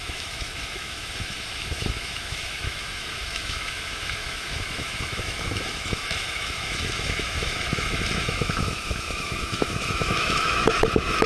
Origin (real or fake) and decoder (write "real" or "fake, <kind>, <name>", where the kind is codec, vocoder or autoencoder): fake, autoencoder, DAC-VAE